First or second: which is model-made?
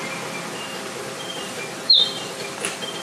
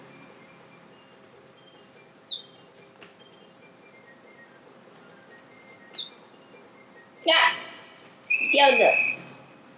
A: first